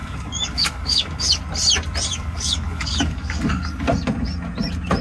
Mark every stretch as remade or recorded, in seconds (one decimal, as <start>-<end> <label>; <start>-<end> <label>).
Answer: 0.0-1.4 remade; 1.4-2.1 recorded; 2.1-3.9 remade; 3.9-5.0 recorded